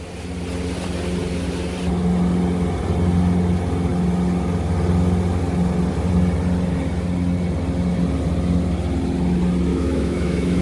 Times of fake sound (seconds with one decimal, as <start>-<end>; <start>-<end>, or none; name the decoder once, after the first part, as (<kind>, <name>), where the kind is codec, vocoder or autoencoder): 9.7-10.6 (autoencoder, DAC-VAE)